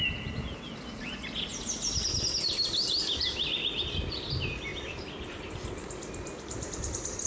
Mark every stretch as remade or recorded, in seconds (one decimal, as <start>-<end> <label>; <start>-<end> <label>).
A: 0.0-7.3 recorded